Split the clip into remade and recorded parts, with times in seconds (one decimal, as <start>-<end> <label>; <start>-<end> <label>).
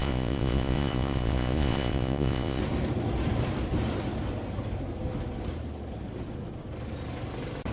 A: 0.0-2.6 remade; 2.6-7.7 recorded